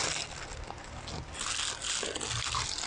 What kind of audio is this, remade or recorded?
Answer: recorded